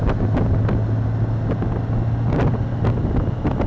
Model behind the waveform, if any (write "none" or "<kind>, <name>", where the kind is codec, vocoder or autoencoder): none